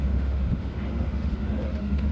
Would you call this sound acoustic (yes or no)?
no